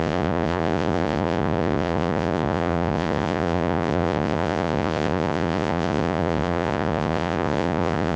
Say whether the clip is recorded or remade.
remade